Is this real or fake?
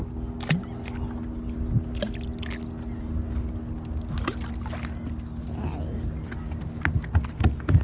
real